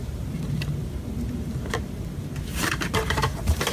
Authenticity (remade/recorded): remade